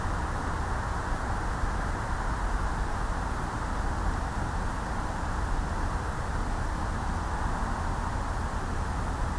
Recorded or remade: recorded